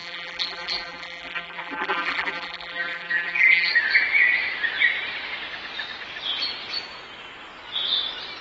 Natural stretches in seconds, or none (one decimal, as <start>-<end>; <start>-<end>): 3.7-8.4